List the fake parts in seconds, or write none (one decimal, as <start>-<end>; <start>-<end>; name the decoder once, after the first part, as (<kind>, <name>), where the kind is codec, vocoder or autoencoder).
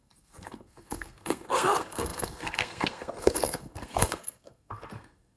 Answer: 0.0-5.4 (codec, SNAC)